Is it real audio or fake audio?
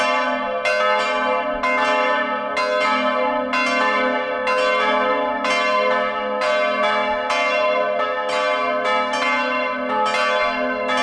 real